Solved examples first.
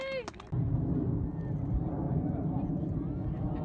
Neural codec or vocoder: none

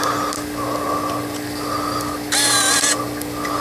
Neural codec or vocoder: none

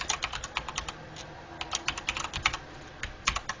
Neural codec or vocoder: none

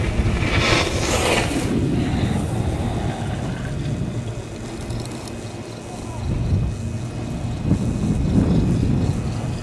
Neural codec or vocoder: none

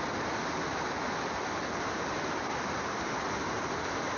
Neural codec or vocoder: none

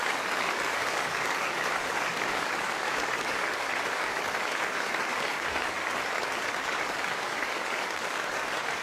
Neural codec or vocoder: codec, DAC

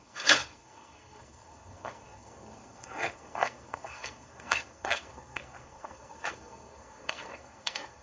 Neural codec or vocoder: codec, SNAC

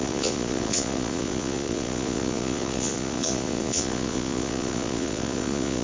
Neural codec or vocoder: vocoder, Vocos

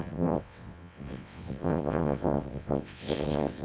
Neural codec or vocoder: vocoder, WaveNeXt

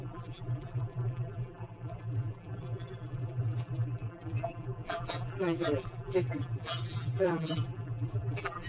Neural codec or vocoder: vocoder, BigVGAN v2